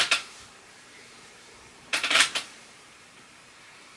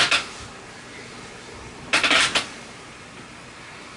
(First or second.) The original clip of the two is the second